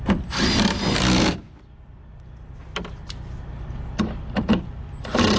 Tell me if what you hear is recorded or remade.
recorded